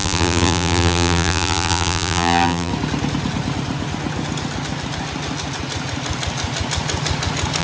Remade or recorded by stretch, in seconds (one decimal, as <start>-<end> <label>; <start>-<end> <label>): 0.0-2.7 remade; 2.7-7.6 recorded